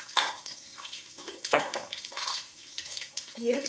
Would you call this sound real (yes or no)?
no